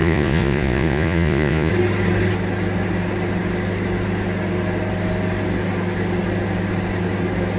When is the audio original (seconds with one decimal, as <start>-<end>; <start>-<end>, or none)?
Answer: 1.7-7.6

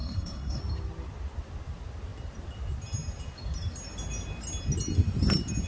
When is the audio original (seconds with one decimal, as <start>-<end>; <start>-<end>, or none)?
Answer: 0.6-5.7